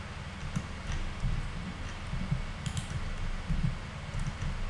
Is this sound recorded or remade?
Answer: recorded